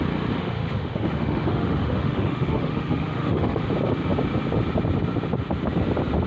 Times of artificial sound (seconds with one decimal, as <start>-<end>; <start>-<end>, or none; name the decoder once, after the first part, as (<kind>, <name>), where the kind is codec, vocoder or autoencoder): 0.4-3.6 (autoencoder, DAC-VAE)